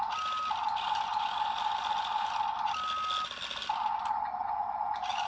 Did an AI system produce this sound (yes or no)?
no